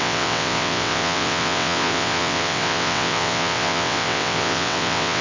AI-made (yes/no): yes